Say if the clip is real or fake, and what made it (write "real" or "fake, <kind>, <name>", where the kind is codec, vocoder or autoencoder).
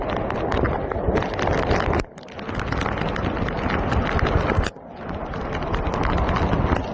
real